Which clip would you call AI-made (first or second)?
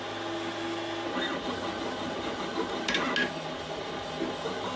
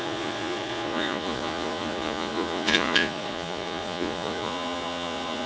second